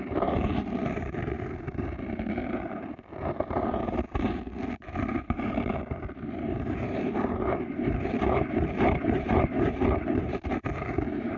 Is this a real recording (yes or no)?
no